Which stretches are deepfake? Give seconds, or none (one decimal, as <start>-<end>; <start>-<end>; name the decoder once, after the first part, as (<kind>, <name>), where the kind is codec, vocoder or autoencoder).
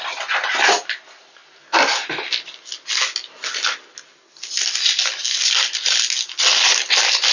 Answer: none